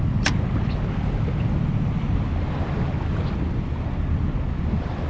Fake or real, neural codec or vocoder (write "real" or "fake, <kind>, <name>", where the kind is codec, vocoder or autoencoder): real